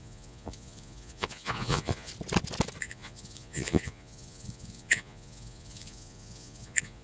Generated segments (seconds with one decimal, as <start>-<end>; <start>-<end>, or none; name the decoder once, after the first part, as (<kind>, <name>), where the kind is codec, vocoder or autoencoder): 0.0-2.1 (vocoder, Vocos); 2.8-7.0